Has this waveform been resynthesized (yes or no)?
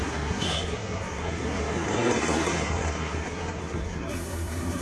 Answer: yes